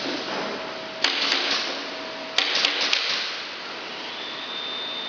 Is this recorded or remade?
recorded